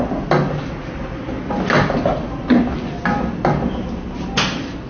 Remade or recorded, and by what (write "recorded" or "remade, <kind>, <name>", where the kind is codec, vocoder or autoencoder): recorded